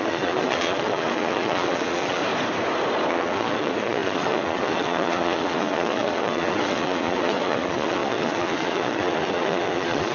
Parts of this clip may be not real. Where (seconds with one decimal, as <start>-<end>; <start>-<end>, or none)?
0.0-2.2; 3.1-10.1